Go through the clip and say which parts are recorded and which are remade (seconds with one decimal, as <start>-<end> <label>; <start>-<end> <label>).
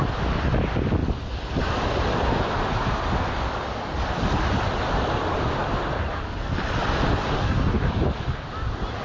0.0-7.2 recorded; 7.2-7.8 remade; 7.8-9.0 recorded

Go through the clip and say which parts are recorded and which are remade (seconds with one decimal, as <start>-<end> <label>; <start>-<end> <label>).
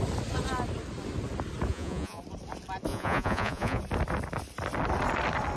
0.0-1.7 recorded; 1.7-2.2 remade; 2.2-2.9 recorded; 2.9-3.8 remade; 3.8-5.6 recorded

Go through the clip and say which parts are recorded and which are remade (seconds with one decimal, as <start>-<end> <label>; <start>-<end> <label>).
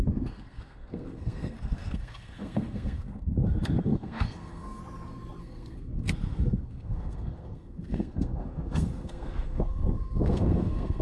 0.0-4.8 remade; 4.8-5.4 recorded; 5.4-11.0 remade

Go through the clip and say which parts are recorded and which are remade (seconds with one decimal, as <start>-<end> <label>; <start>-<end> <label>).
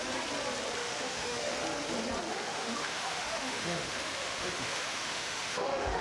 0.0-0.8 recorded; 0.8-1.5 remade; 1.5-2.3 recorded; 2.3-6.0 remade